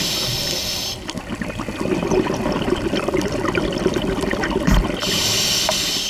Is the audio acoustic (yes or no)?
yes